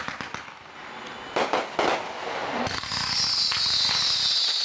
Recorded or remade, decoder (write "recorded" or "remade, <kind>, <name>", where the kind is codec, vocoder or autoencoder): recorded